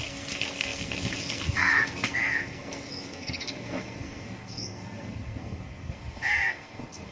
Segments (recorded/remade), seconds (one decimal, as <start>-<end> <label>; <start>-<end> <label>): 0.0-7.1 remade

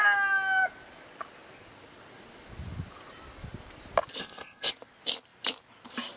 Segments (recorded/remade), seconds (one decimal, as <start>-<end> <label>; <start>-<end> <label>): 0.0-4.2 recorded; 4.2-4.7 remade; 4.7-6.2 recorded

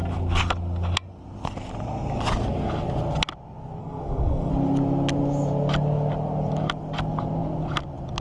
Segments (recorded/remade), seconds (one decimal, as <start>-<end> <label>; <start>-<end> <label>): 0.0-3.8 recorded; 3.8-4.5 remade; 4.5-8.2 recorded

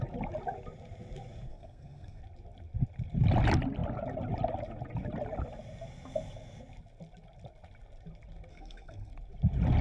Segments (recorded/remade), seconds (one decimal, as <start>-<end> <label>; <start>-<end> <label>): 0.0-1.5 recorded; 1.5-2.2 remade; 2.2-8.5 recorded; 8.5-9.1 remade; 9.1-9.8 recorded